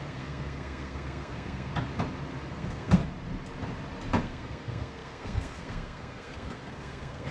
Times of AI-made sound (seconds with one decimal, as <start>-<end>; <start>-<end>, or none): 0.0-1.7; 2.5-3.0; 4.2-7.3